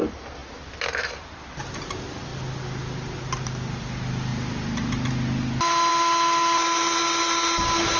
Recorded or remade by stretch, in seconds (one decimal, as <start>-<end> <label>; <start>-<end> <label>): 0.0-8.0 recorded